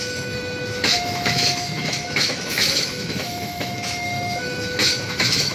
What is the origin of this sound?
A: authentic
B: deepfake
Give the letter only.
B